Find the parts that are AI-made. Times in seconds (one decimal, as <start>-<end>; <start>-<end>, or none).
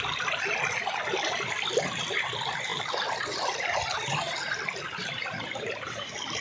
none